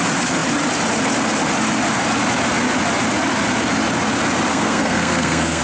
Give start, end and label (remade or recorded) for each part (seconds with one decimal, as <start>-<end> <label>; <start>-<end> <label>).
0.0-4.5 recorded; 4.5-5.6 remade